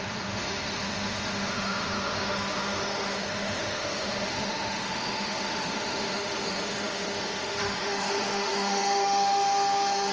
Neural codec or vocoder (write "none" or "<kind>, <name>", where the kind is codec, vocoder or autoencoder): autoencoder, DAC-VAE